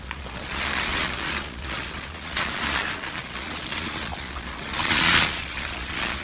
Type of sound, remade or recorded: remade